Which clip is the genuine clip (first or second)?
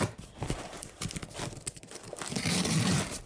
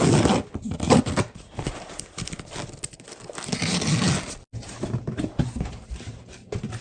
second